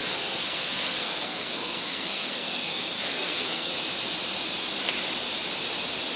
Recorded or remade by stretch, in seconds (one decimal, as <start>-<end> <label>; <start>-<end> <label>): 0.0-3.7 remade; 3.7-6.2 recorded